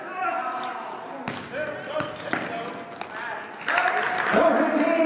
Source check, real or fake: real